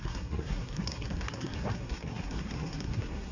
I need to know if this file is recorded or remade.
remade